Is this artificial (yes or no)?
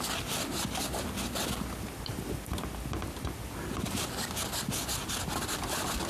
no